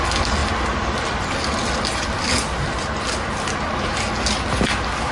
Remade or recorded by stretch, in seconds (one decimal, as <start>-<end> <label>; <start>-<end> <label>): 0.0-5.1 recorded